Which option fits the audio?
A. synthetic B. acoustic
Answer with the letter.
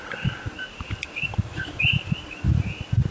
B